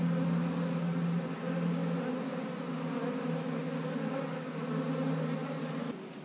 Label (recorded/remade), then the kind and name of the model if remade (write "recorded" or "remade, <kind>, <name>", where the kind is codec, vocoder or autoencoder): recorded